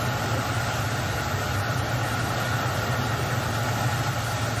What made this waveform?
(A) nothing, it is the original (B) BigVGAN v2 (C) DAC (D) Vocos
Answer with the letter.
B